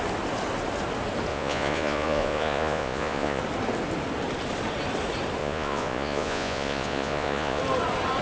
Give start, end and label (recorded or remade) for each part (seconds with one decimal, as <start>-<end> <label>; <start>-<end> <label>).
0.0-1.3 recorded; 1.3-3.4 remade; 3.4-5.4 recorded; 5.4-7.6 remade; 7.6-8.2 recorded